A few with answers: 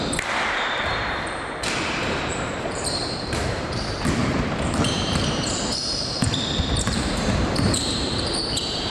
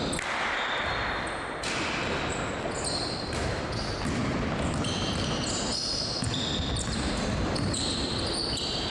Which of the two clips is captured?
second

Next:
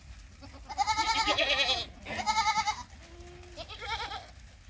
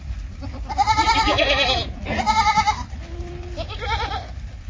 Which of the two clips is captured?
first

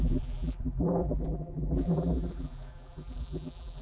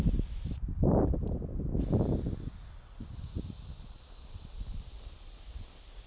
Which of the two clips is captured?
second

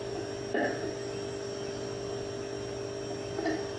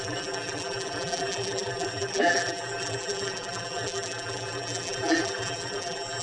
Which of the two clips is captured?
first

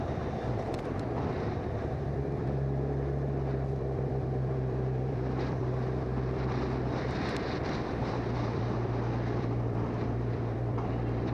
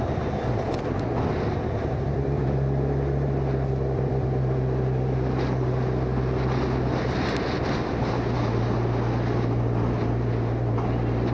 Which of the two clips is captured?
second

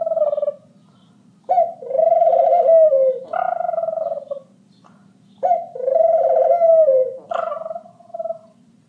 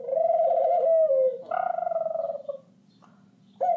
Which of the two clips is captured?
second